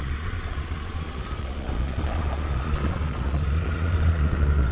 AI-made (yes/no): yes